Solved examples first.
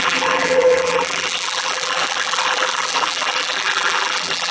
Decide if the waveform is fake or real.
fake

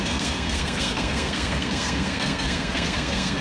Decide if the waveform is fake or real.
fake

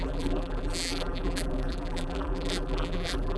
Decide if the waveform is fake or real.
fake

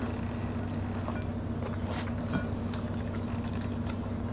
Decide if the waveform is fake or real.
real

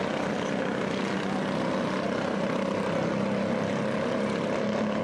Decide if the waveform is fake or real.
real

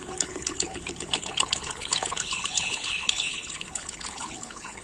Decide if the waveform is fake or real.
fake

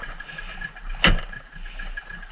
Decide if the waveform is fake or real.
real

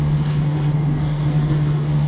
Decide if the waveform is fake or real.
fake